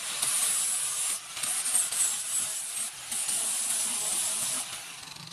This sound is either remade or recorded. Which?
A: recorded